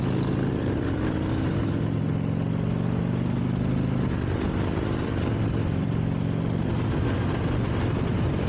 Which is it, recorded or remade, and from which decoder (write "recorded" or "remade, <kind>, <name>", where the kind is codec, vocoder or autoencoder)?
recorded